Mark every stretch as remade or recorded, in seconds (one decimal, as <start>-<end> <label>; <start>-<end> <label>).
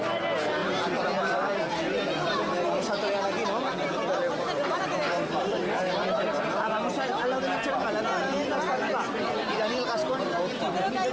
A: 0.0-11.1 recorded